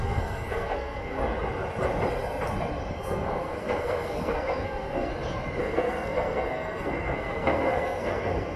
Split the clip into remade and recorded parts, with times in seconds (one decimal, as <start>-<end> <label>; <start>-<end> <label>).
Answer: 0.0-1.2 remade; 1.2-2.9 recorded; 2.9-5.1 remade; 5.1-5.6 recorded; 5.6-8.6 remade